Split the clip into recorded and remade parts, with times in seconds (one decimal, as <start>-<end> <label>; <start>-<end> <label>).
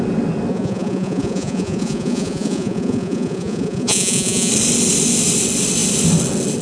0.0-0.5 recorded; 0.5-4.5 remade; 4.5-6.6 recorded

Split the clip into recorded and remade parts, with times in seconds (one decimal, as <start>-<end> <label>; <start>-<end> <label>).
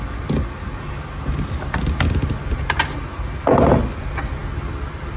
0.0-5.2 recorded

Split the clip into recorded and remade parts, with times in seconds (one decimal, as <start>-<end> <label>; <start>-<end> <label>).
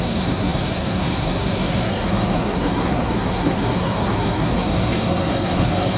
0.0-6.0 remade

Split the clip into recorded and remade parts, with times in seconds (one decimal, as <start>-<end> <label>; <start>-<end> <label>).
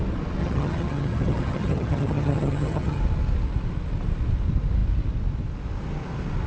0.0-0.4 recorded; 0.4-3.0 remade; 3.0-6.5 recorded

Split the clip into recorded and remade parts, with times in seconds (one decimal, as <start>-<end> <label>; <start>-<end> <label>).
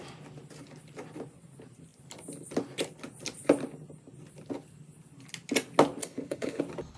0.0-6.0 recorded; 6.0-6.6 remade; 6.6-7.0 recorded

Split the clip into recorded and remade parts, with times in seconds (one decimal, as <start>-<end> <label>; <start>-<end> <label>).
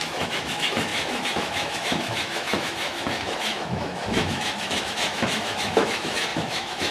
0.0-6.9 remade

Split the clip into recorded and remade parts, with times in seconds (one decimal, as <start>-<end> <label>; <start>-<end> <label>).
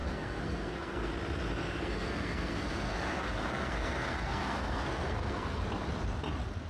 0.0-1.1 remade; 1.1-1.6 recorded; 1.6-5.6 remade; 5.6-6.7 recorded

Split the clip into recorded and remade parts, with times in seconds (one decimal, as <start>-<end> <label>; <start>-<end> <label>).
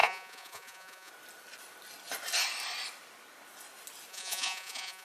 0.0-1.1 remade; 1.1-4.1 recorded; 4.1-5.0 remade